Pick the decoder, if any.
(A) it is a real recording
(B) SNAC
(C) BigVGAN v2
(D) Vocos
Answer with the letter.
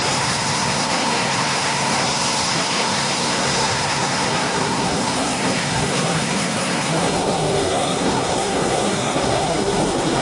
B